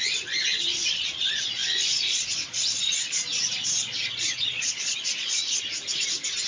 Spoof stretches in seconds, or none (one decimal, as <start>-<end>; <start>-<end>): 0.0-5.7